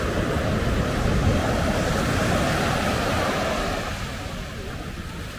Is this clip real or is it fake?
real